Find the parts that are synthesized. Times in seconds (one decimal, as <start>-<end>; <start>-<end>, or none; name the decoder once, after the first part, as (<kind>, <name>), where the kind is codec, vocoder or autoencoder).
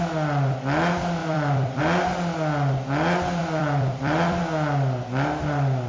1.2-1.8 (vocoder, BigVGAN v2); 3.4-4.4